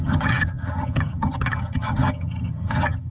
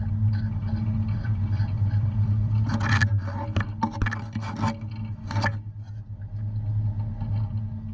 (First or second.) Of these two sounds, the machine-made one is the first